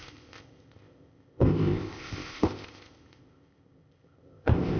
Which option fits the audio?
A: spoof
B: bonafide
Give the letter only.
A